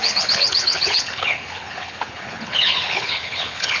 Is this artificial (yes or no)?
yes